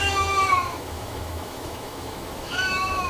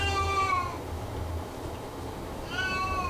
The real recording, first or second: second